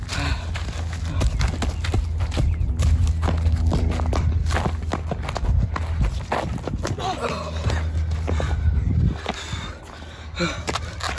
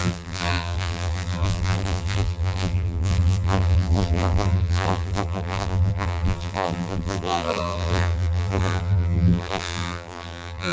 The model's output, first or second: second